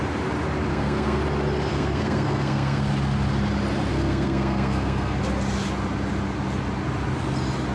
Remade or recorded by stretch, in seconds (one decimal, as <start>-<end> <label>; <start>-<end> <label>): 0.0-0.7 recorded; 0.7-1.2 remade; 1.2-1.7 recorded; 1.7-2.9 remade; 2.9-3.9 recorded; 3.9-5.2 remade; 5.2-7.7 recorded